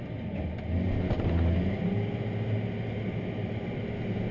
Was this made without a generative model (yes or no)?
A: yes